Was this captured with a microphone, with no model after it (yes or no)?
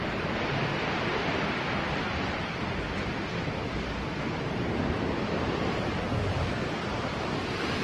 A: no